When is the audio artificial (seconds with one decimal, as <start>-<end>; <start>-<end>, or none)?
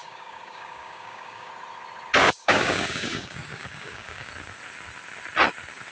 0.0-1.5; 2.2-4.3